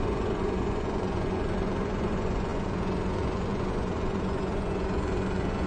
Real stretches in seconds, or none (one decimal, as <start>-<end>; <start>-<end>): none